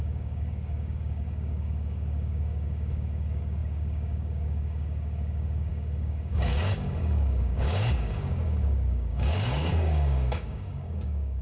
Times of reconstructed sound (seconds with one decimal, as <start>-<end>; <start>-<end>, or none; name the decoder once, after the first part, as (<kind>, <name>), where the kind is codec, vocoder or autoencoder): 0.0-11.4 (codec, DAC)